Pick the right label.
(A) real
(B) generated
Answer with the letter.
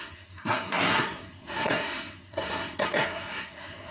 B